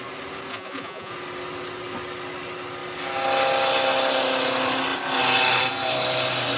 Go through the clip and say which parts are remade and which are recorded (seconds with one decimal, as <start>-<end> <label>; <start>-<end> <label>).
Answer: 0.0-0.5 recorded; 0.5-1.1 remade; 1.1-6.6 recorded